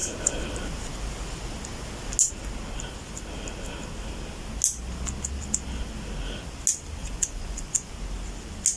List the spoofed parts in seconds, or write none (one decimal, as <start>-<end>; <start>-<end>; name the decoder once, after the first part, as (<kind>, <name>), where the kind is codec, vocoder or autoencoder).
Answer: 7.0-7.9 (vocoder, Vocos)